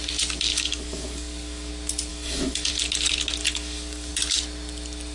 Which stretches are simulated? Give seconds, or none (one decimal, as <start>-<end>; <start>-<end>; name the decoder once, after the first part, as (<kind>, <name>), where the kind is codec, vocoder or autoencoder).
0.5-1.7 (codec, DAC); 2.1-2.7; 3.4-4.1